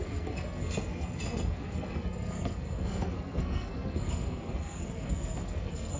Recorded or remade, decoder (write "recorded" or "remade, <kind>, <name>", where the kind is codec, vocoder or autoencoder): remade, codec, SNAC